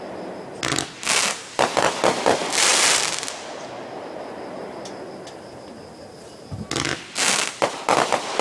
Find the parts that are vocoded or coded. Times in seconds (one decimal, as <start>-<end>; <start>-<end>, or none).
none